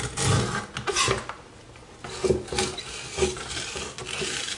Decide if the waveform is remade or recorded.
recorded